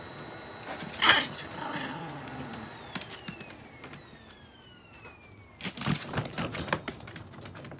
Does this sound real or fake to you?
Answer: real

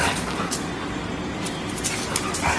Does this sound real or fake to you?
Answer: real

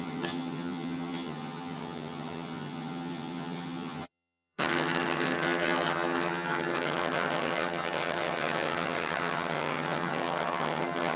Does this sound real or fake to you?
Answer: fake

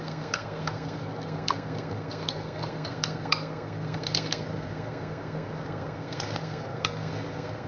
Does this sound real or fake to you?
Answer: fake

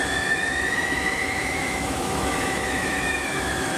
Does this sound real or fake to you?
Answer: fake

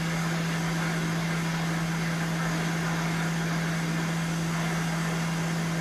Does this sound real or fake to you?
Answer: real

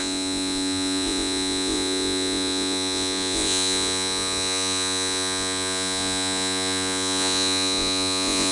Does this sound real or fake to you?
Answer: fake